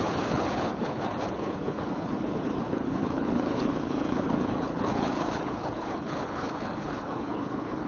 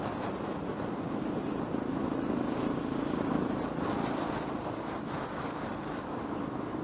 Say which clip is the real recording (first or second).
second